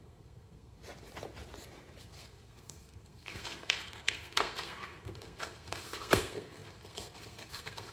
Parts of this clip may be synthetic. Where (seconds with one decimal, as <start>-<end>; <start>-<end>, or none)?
0.0-0.8; 2.0-7.9